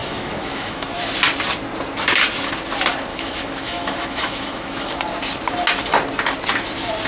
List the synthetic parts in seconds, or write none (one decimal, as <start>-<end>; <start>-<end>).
0.0-1.0; 3.1-4.9